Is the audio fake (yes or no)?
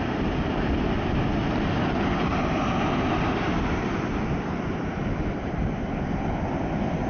no